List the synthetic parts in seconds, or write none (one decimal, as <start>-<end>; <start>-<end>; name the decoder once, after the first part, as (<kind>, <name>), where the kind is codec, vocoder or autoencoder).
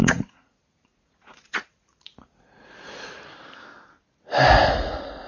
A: 0.0-3.2 (vocoder, Vocos)